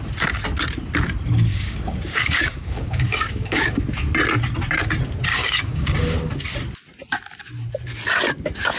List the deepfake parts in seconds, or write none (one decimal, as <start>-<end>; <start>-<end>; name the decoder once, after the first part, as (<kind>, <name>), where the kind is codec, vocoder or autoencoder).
1.5-3.8 (codec, DAC); 5.3-5.9